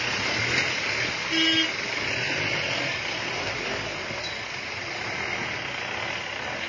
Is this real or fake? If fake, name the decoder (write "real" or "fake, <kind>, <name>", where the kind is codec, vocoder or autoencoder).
real